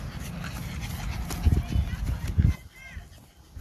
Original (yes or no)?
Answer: yes